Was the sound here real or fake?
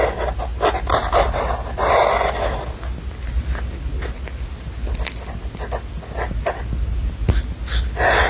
real